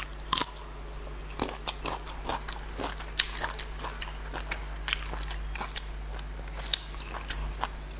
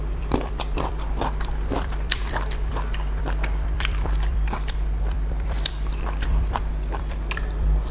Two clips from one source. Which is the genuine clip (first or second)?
first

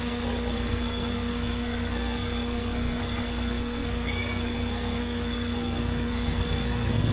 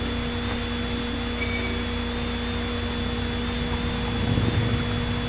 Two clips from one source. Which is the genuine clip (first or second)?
second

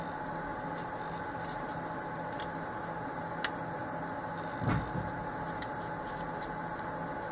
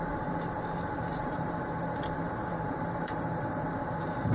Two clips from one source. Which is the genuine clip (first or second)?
first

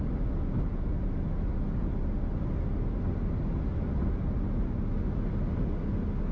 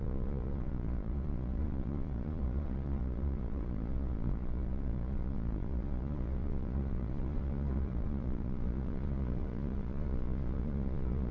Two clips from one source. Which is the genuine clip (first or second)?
first